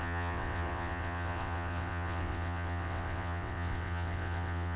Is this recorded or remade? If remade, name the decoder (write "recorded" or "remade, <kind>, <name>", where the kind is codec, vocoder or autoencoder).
remade, vocoder, WaveNeXt